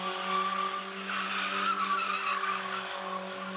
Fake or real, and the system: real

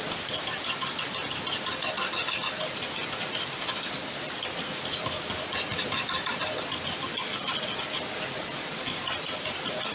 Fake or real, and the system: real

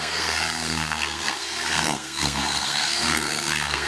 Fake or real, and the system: fake, codec, SNAC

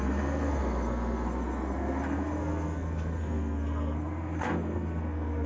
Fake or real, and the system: fake, codec, SNAC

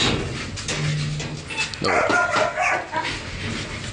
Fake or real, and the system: real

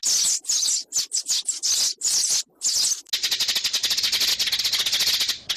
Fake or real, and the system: real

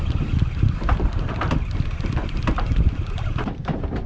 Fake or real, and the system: real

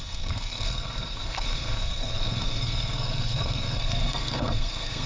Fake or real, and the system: fake, codec, SNAC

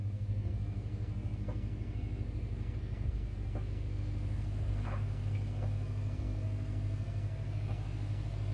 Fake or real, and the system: fake, codec, SNAC